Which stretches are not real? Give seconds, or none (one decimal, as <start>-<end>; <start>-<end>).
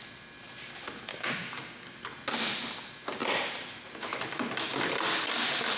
1.1-2.0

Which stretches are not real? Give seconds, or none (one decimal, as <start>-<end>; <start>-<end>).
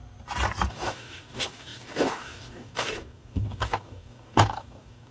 0.7-5.1